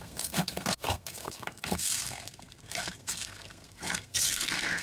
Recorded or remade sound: remade